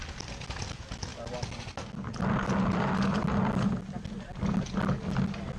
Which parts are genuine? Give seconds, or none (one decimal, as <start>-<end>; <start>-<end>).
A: 0.0-5.6